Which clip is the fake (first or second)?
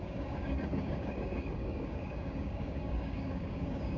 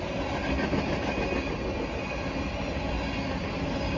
first